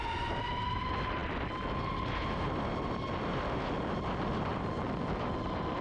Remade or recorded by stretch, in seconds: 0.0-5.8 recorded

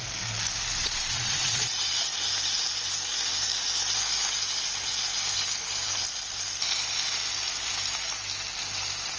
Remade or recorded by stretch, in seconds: 0.0-0.8 recorded; 0.8-1.8 remade; 1.8-9.2 recorded

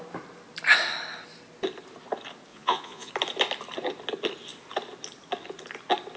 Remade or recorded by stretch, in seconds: 0.0-2.5 recorded; 2.5-3.1 remade; 3.1-6.2 recorded

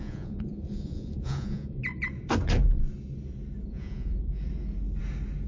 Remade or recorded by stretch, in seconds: 0.0-1.8 remade; 1.8-3.6 recorded; 3.6-4.4 remade; 4.4-5.5 recorded